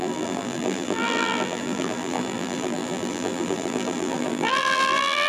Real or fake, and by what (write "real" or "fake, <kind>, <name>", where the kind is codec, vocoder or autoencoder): fake, vocoder, BigVGAN v2